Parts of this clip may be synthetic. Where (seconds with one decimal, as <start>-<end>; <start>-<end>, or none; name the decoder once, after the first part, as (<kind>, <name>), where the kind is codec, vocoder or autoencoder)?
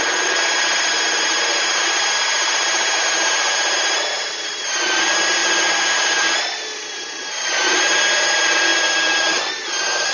none